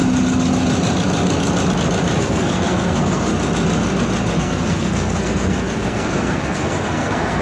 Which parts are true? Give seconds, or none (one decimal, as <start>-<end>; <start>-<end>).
0.0-2.2; 3.3-4.4